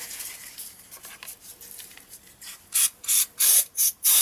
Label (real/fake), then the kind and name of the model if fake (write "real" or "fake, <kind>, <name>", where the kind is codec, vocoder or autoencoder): fake, vocoder, BigVGAN v2